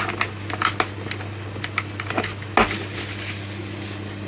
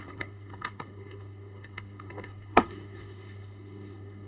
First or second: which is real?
first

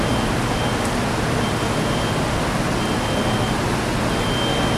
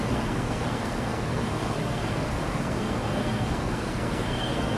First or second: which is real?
first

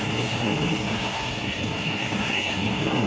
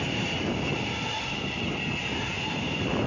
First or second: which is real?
second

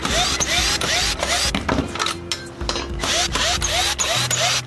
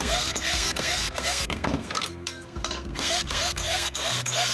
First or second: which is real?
first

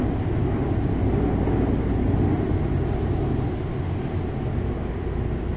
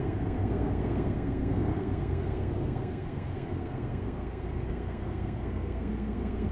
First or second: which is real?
first